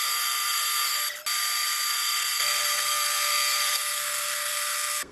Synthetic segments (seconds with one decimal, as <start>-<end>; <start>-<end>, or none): 0.0-1.0; 1.9-5.1